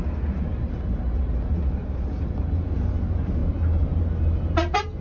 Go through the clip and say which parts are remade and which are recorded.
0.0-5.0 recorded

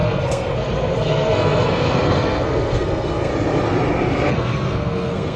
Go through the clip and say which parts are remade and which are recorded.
0.0-3.3 remade; 3.3-4.3 recorded; 4.3-5.4 remade